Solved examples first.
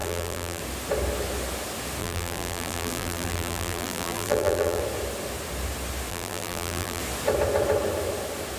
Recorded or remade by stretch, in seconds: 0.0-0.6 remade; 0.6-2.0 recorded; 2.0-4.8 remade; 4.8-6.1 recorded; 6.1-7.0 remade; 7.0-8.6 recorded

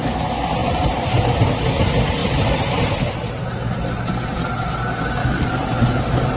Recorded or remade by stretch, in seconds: 0.0-5.2 recorded; 5.2-6.0 remade; 6.0-6.4 recorded

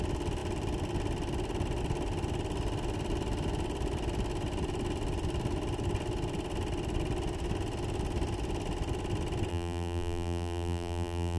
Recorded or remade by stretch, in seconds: 0.0-9.5 recorded; 9.5-11.4 remade

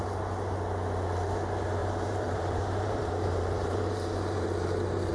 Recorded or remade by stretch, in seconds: 0.0-1.8 recorded; 1.8-5.1 remade